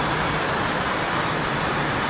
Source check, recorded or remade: recorded